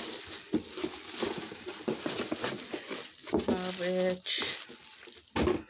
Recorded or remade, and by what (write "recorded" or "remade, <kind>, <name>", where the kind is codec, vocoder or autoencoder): recorded